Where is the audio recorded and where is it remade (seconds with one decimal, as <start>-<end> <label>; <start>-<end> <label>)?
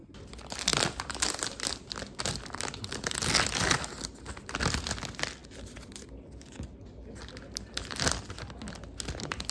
0.0-9.5 recorded